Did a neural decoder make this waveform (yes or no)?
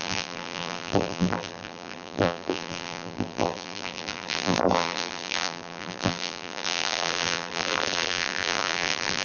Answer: yes